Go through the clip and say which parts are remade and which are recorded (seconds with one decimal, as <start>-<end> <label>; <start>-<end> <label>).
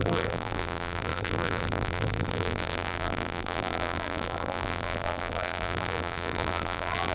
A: 0.0-7.1 remade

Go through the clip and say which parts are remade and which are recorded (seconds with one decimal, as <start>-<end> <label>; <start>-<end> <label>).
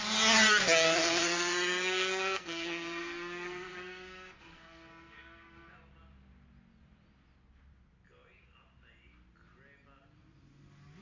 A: 0.0-1.0 recorded; 1.0-5.7 remade; 5.7-11.0 recorded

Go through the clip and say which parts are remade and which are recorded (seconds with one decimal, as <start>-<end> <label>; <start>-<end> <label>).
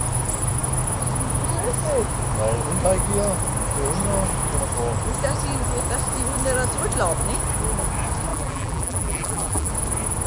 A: 0.0-8.3 recorded; 8.3-9.7 remade; 9.7-10.3 recorded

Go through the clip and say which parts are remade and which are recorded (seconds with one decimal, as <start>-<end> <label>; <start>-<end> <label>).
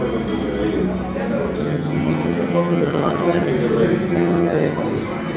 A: 0.0-1.6 recorded; 1.6-3.5 remade; 3.5-4.1 recorded; 4.1-4.8 remade; 4.8-5.4 recorded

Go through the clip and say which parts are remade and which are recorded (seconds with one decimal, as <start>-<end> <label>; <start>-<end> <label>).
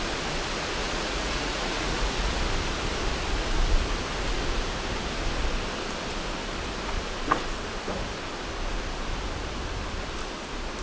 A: 0.0-0.8 recorded; 0.8-2.4 remade; 2.4-10.8 recorded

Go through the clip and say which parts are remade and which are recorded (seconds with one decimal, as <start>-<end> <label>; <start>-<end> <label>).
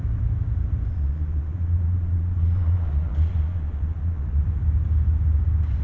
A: 0.0-0.9 recorded; 0.9-4.4 remade; 4.4-5.8 recorded